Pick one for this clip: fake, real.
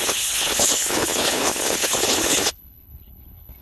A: fake